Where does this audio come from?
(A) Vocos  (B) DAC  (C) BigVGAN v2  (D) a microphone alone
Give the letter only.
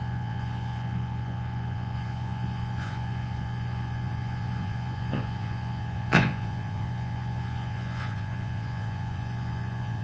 A